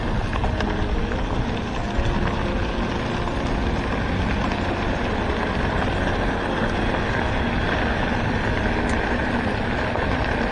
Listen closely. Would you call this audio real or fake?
real